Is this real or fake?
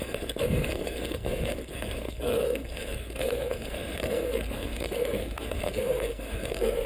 fake